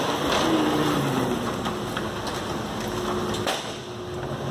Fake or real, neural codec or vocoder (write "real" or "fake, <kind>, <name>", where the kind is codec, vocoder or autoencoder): real